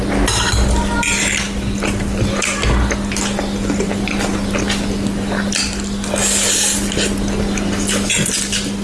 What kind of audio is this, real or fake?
real